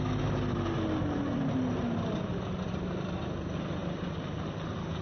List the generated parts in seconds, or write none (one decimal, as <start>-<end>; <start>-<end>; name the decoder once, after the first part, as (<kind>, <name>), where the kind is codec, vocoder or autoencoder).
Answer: none